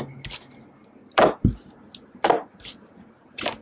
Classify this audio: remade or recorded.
recorded